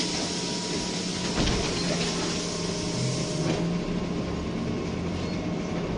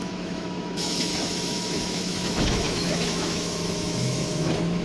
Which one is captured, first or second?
first